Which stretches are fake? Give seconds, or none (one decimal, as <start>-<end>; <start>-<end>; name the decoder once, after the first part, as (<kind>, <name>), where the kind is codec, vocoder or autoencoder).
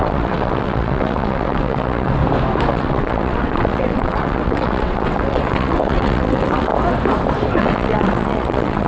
0.0-2.2 (vocoder, WaveNeXt); 2.7-6.7; 7.6-8.9